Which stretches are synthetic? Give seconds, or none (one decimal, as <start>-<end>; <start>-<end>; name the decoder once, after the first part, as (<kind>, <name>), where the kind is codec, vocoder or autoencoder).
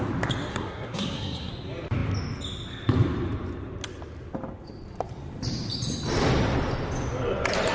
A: 0.5-1.5 (codec, SNAC)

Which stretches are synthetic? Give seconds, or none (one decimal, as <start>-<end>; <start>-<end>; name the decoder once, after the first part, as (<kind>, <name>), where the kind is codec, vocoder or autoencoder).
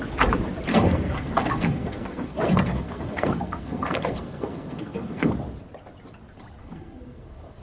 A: 0.7-5.3 (codec, SNAC); 6.6-7.6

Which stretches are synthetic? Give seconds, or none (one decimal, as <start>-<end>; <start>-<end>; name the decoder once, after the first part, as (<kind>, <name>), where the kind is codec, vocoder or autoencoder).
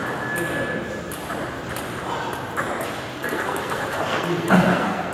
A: 3.1-5.1 (codec, SNAC)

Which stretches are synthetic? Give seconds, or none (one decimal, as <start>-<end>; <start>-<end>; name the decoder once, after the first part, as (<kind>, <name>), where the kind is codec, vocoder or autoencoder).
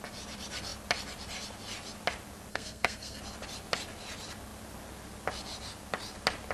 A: 2.5-3.2 (codec, SNAC)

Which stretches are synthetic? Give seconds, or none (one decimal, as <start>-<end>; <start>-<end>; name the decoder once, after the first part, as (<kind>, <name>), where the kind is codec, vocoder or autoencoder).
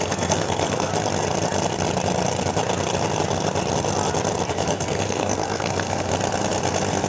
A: 0.0-0.9 (codec, SNAC); 4.5-6.1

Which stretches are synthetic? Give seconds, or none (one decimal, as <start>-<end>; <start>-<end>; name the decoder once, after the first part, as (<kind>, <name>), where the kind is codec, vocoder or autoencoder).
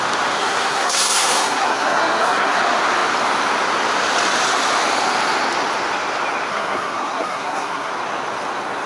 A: 0.4-2.6 (codec, SNAC); 6.5-7.9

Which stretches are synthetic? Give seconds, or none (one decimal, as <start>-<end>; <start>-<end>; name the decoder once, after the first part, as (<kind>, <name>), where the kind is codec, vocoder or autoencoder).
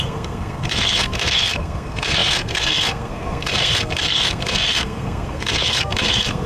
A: 0.0-6.5 (codec, SNAC)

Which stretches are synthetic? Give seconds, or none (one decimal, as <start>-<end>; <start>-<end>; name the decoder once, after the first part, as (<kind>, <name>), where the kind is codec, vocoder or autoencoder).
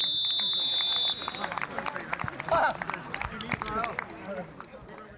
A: none